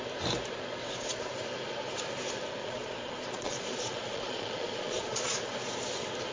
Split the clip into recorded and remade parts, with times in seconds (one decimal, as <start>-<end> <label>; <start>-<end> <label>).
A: 0.0-0.8 recorded; 0.8-1.3 remade; 1.3-2.6 recorded; 2.6-5.5 remade; 5.5-6.3 recorded